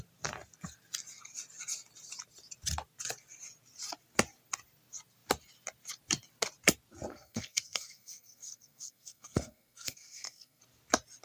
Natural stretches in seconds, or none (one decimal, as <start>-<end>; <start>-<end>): 0.0-7.1; 10.6-11.2